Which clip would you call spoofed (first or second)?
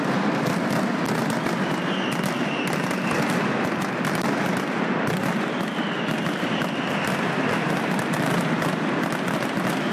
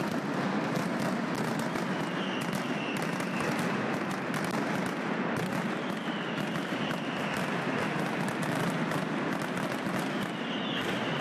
first